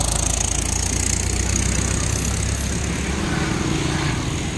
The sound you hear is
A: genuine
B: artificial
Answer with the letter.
A